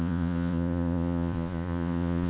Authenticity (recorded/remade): remade